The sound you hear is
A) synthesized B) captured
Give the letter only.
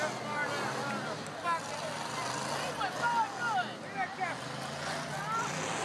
B